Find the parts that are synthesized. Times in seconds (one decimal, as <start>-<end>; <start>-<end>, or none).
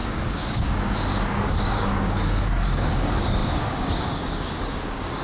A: 0.0-5.2